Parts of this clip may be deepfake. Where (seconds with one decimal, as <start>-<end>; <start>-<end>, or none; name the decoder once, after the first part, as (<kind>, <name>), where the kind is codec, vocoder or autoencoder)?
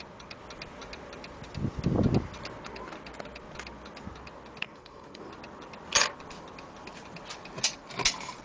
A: 4.6-5.2 (codec, SNAC)